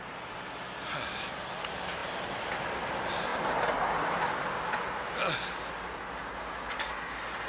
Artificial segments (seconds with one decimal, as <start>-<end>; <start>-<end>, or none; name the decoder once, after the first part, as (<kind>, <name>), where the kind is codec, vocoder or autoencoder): none